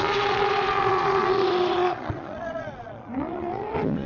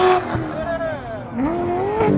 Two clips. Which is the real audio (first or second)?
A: second